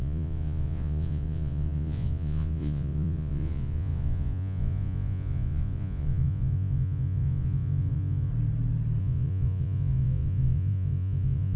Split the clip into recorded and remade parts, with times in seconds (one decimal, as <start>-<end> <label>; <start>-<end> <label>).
0.0-8.3 remade; 8.3-9.0 recorded; 9.0-11.6 remade